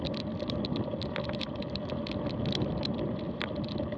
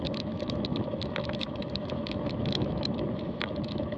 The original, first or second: first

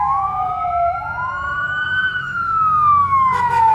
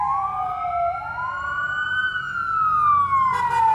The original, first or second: second